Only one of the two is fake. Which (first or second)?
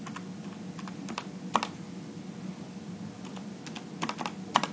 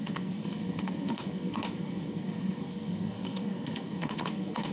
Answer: second